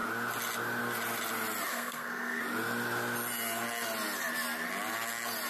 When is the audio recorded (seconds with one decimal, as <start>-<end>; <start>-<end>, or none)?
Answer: 0.0-1.7; 2.4-5.5